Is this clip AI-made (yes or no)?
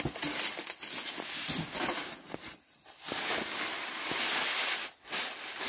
no